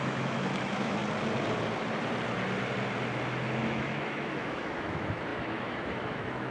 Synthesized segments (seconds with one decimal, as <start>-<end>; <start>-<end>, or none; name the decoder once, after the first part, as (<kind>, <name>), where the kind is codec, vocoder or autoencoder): 0.0-1.0 (autoencoder, DAC-VAE); 3.6-6.5